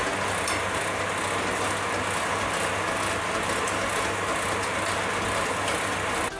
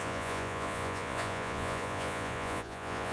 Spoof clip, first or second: second